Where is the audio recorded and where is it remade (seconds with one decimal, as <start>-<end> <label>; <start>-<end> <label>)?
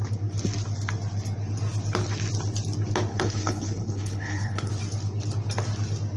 0.0-3.1 recorded; 3.1-4.7 remade; 4.7-6.2 recorded